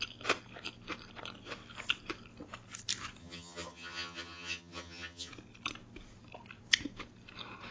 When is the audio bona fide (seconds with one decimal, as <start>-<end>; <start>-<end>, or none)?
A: 0.0-3.2; 5.3-7.7